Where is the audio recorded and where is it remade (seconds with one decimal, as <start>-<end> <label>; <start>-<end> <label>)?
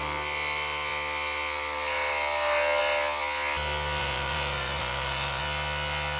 0.0-4.0 recorded; 4.0-5.4 remade; 5.4-6.2 recorded